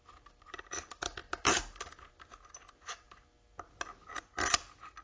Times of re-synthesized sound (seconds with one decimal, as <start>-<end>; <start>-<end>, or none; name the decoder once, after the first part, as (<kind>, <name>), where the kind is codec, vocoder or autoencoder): none